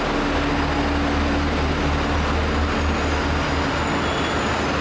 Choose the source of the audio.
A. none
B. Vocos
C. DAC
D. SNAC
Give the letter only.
A